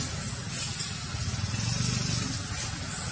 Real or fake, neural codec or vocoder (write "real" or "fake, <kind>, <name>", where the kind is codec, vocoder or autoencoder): real